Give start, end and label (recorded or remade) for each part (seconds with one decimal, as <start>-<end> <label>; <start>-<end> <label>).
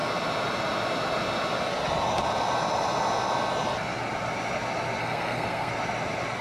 0.0-5.0 recorded; 5.0-5.7 remade; 5.7-6.4 recorded